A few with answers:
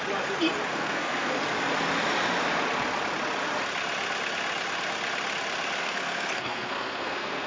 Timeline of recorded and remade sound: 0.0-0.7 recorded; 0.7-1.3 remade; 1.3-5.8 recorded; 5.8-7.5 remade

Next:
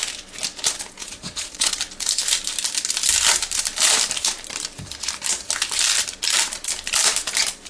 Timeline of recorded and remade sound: 0.0-1.0 recorded; 1.0-1.7 remade; 1.7-7.7 recorded

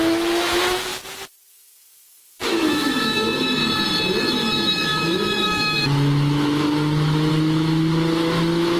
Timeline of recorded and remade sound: 0.0-0.9 remade; 0.9-1.5 recorded; 1.5-3.6 remade; 3.6-4.2 recorded; 4.2-8.8 remade